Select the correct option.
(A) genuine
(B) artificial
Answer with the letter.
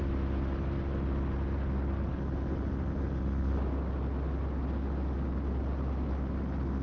A